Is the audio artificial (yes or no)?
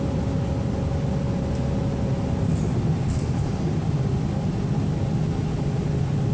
no